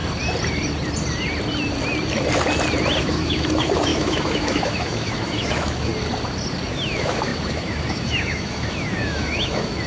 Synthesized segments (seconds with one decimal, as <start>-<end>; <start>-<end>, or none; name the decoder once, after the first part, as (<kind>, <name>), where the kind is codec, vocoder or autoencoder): 3.0-5.9 (autoencoder, DAC-VAE); 6.7-9.9